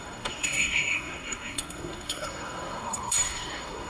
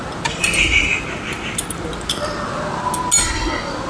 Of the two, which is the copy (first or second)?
first